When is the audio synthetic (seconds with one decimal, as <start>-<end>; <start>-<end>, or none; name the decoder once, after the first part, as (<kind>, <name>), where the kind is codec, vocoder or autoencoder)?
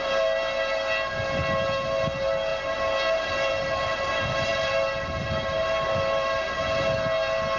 none